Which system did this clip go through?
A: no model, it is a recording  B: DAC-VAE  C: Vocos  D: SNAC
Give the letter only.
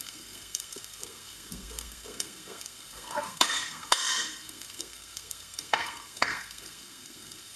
D